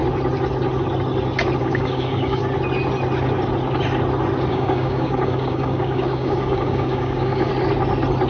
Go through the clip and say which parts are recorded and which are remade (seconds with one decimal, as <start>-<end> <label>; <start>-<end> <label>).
0.0-1.6 recorded; 1.6-2.4 remade; 2.4-4.5 recorded; 4.5-7.5 remade; 7.5-8.3 recorded